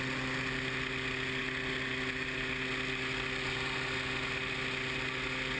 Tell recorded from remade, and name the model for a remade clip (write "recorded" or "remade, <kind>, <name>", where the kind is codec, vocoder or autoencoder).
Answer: recorded